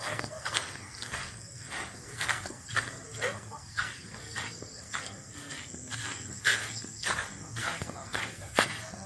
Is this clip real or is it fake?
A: fake